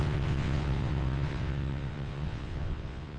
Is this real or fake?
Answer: fake